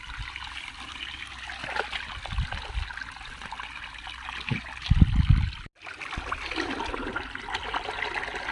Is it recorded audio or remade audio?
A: recorded